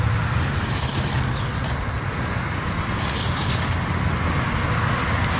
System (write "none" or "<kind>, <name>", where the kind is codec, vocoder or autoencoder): none